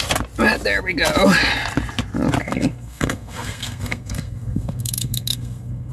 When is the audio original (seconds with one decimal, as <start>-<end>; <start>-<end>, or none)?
0.0-2.4